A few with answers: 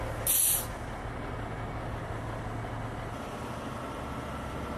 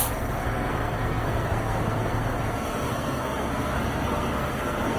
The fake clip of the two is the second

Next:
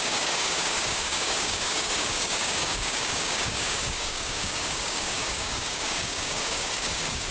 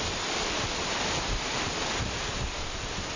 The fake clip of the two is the first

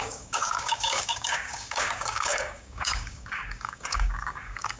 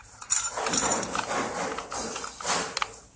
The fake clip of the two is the first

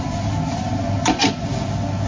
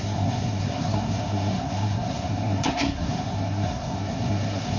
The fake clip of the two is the second